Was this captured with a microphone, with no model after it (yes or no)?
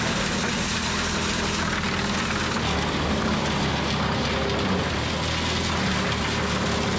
yes